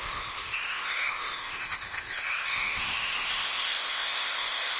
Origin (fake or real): fake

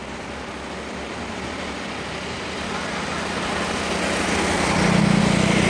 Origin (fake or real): real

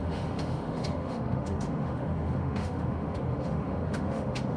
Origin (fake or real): fake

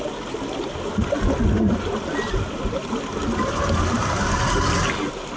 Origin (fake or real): real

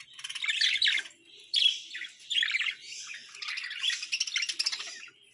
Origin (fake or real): fake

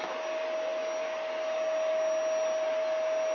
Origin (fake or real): real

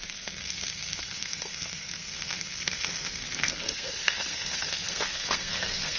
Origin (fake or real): fake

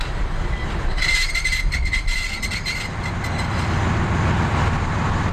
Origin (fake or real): real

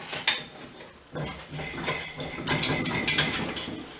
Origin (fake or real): real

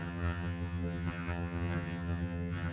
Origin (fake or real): fake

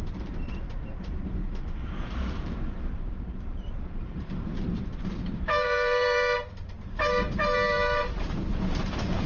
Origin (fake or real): fake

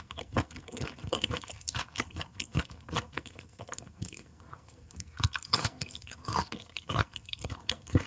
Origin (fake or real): fake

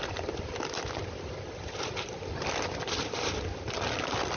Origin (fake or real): real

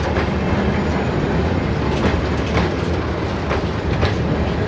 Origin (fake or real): real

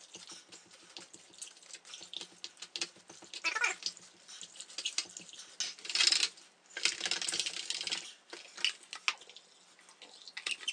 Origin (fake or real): real